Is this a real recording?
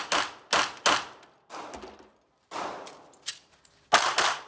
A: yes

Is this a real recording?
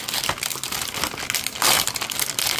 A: yes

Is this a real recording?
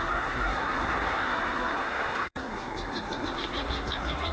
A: no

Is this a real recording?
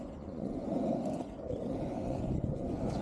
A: no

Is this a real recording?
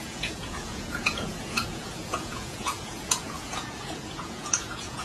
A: no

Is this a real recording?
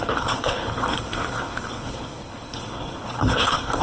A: no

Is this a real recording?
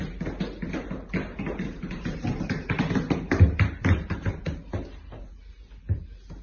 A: yes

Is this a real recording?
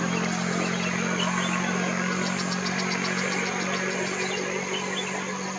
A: yes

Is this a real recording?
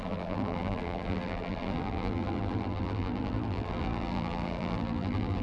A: no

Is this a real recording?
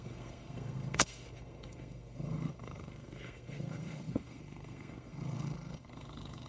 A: no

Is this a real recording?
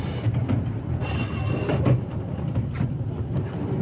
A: yes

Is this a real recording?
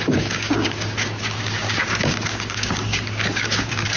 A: no